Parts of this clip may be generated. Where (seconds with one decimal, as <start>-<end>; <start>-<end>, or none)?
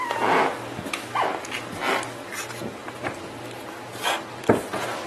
none